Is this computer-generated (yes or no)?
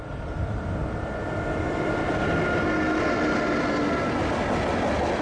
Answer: no